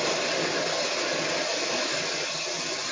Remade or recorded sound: recorded